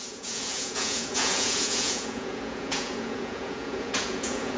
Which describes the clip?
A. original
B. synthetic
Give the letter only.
B